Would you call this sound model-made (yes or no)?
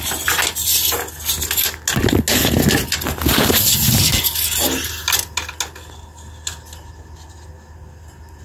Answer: no